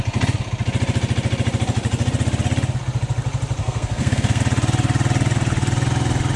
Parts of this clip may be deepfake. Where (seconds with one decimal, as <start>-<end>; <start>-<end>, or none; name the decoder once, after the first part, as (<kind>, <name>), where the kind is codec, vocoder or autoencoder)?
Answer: 3.6-4.4 (codec, SNAC)

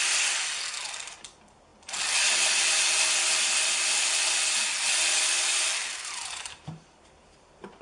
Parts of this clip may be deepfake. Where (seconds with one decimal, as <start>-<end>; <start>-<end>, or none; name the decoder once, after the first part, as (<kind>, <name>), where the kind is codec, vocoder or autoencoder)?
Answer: 5.8-7.8 (vocoder, BigVGAN v2)

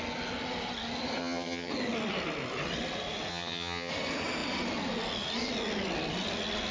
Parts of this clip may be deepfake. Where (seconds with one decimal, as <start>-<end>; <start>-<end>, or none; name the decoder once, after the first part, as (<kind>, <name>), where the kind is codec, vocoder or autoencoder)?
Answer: 1.2-1.7 (vocoder, HiFi-GAN); 3.3-3.9

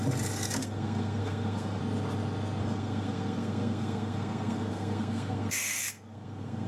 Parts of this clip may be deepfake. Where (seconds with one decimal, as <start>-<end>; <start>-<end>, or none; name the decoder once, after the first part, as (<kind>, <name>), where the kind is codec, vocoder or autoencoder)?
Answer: 0.6-1.8 (codec, SNAC); 2.6-6.7

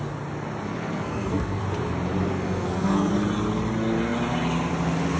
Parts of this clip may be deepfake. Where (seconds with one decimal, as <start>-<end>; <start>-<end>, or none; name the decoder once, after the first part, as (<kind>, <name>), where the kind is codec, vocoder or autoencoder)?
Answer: 0.8-1.6 (codec, SNAC); 2.3-3.1